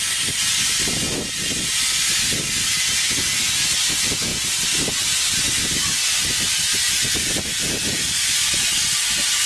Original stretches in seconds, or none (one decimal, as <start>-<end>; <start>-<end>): 0.0-4.3; 5.3-9.5